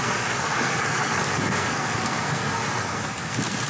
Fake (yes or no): yes